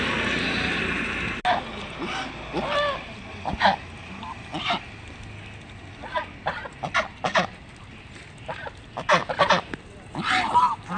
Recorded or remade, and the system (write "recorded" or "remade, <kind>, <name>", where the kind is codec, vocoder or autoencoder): recorded